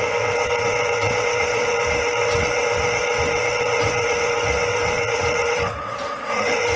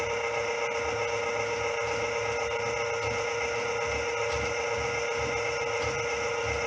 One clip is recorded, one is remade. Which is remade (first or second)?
first